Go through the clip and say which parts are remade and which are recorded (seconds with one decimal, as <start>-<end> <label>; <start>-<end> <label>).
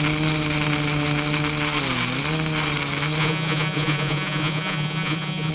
0.0-3.2 recorded; 3.2-5.5 remade